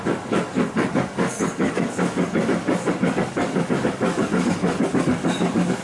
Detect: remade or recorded remade